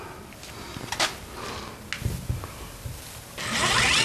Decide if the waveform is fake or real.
real